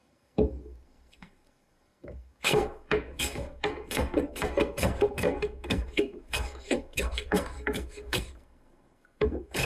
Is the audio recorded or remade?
remade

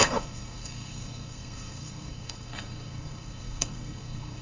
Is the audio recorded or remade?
remade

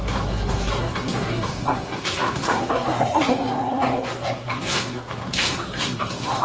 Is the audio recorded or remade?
remade